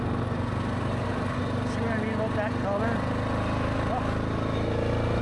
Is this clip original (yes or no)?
yes